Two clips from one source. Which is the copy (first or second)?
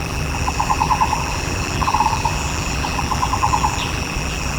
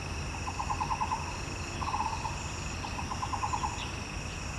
first